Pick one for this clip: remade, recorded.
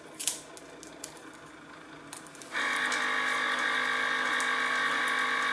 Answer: recorded